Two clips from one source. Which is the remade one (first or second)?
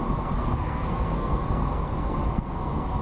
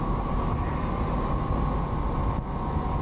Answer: first